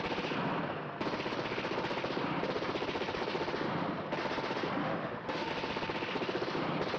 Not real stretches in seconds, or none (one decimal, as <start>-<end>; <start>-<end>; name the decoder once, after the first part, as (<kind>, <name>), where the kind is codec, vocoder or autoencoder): 4.8-5.5 (autoencoder, DAC-VAE)